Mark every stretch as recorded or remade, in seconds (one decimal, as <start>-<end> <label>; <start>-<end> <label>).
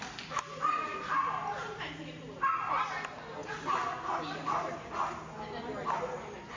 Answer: 0.0-0.9 recorded; 0.9-1.8 remade; 1.8-3.4 recorded; 3.4-3.9 remade; 3.9-6.6 recorded